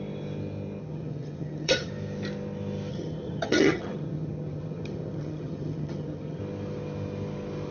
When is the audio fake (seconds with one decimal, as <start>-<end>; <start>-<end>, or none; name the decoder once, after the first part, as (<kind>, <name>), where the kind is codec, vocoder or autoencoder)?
0.8-1.9 (vocoder, HiFi-GAN); 2.9-6.4